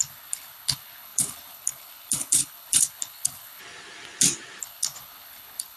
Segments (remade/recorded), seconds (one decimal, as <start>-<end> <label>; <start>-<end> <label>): 0.0-3.6 remade; 3.6-4.6 recorded; 4.6-5.8 remade